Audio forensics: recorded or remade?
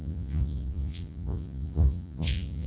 remade